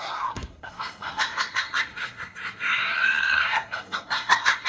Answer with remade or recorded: remade